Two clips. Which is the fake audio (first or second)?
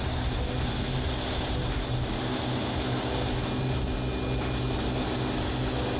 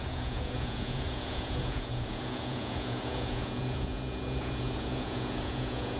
second